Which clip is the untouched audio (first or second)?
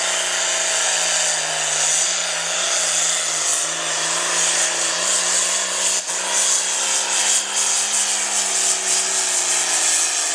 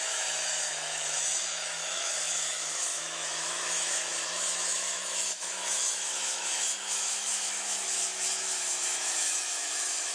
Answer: first